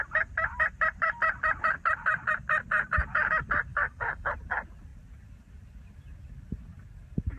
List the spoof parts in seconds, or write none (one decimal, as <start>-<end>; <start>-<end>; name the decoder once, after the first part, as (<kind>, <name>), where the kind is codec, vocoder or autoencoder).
3.7-4.3 (codec, DAC)